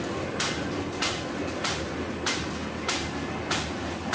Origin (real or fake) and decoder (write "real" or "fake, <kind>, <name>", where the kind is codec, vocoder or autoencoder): real